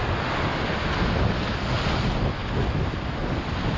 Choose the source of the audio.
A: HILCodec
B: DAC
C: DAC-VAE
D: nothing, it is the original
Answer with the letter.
D